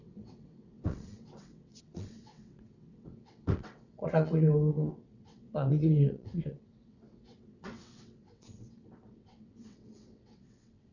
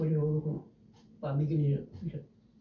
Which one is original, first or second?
second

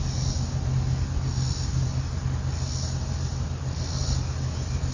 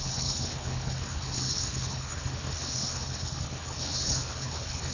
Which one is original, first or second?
first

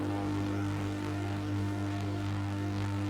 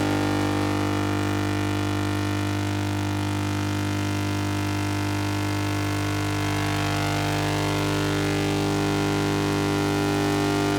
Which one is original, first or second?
second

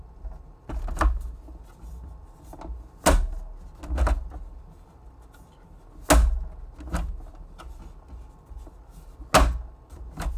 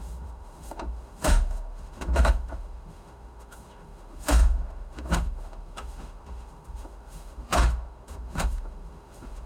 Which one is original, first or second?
first